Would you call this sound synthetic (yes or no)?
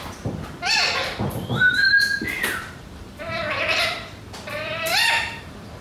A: yes